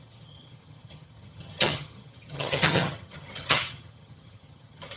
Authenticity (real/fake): fake